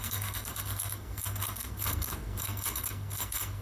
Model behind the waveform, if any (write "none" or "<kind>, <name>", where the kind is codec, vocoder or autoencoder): codec, SNAC